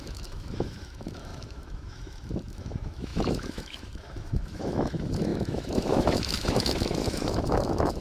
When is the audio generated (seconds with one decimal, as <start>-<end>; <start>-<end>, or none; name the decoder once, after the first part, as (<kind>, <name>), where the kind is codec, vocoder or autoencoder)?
0.0-8.0 (autoencoder, DAC-VAE)